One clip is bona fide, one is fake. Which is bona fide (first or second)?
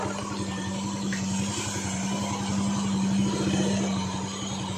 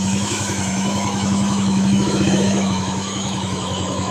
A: first